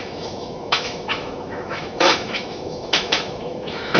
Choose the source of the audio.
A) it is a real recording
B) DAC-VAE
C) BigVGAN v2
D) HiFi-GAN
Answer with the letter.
B